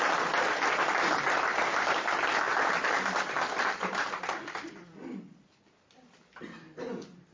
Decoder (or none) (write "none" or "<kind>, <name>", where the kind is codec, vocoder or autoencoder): none